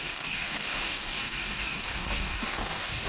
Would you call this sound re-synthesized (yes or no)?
yes